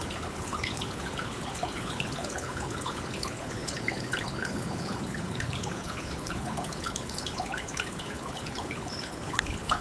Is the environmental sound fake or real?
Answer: fake